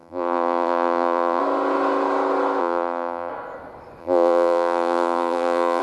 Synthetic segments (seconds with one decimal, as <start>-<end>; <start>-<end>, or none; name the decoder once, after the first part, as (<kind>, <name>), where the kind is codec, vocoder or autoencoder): 0.0-1.4 (vocoder, BigVGAN v2); 2.6-3.3; 4.0-5.8